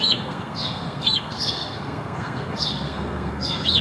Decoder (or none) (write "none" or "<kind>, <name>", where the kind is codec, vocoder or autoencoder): codec, SNAC